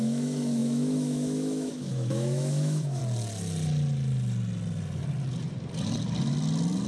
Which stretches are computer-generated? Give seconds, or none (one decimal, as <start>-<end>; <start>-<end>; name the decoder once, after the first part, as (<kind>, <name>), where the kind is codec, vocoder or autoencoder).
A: 0.0-3.0 (autoencoder, DAC-VAE)